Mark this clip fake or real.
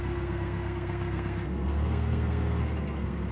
fake